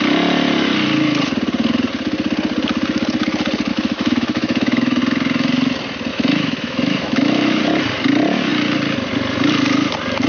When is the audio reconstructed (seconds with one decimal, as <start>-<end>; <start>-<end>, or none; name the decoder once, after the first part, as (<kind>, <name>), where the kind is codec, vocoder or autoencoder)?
3.7-5.0 (autoencoder, DAC-VAE); 6.1-7.6